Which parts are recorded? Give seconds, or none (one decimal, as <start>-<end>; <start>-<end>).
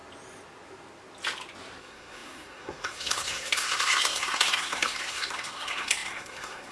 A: 0.0-1.8